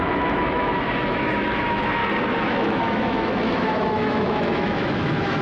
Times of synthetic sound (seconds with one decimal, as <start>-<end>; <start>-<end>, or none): 0.0-2.0; 2.5-5.4